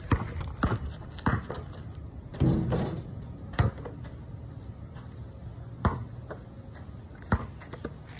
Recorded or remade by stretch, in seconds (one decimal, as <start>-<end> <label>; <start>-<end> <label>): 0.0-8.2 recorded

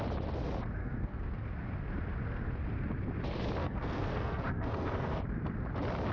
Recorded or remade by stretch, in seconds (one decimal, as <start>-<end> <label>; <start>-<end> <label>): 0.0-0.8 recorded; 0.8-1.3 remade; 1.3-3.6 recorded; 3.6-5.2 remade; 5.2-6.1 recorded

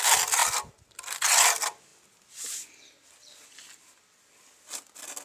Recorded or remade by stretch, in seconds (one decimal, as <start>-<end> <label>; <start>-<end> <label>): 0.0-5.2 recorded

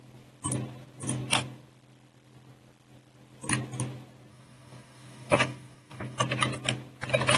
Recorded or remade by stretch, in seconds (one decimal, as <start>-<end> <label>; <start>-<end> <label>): 0.0-4.3 recorded; 4.3-6.2 remade; 6.2-7.4 recorded

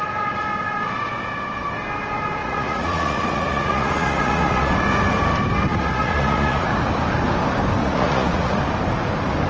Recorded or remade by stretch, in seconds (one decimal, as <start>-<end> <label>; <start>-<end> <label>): 0.0-2.4 recorded; 2.4-4.7 remade; 4.7-5.7 recorded; 5.7-6.7 remade; 6.7-7.8 recorded; 7.8-8.6 remade; 8.6-9.5 recorded